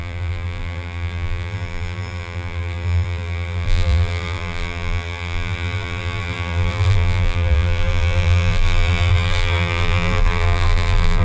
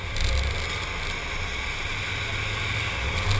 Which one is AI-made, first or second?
first